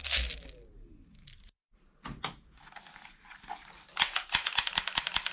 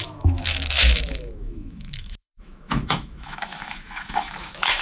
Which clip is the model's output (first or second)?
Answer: second